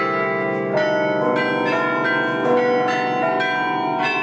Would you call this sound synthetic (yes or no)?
no